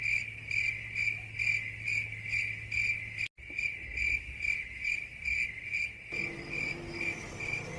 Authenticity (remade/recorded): recorded